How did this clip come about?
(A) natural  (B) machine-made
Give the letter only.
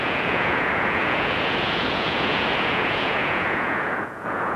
B